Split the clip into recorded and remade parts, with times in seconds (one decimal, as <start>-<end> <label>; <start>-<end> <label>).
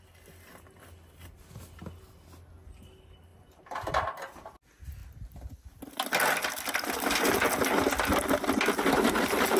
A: 0.0-9.6 recorded